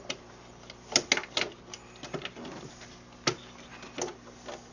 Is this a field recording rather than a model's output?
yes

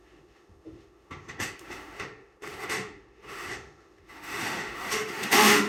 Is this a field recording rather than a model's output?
no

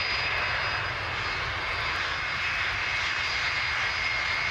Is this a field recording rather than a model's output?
yes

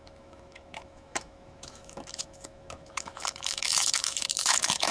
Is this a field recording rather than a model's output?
no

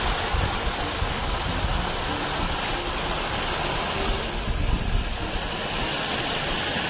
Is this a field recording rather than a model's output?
yes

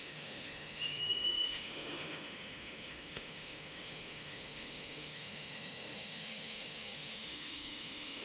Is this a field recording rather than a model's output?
no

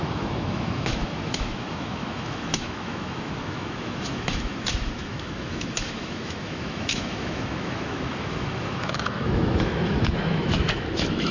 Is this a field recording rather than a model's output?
no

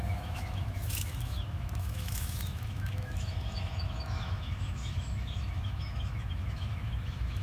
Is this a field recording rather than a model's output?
no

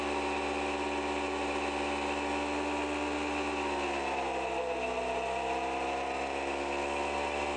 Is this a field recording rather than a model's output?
yes